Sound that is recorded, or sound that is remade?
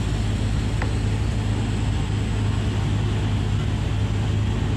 recorded